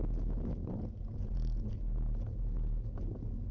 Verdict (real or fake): real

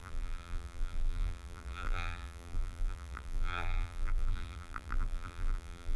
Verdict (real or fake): fake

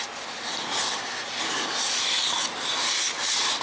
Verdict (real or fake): real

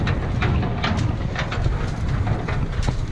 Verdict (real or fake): real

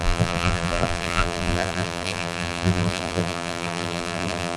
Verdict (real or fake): fake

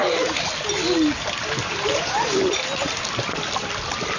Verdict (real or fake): real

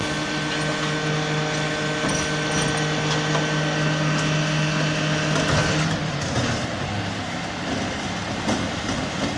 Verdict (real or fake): real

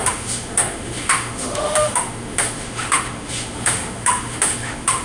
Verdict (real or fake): fake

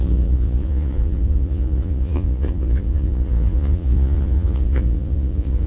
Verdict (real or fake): fake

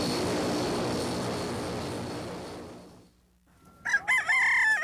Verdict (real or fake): real